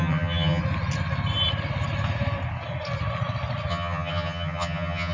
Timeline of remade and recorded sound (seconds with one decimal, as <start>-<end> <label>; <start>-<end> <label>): 0.0-0.6 remade; 0.6-3.7 recorded; 3.7-5.1 remade